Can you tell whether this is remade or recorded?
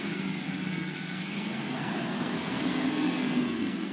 remade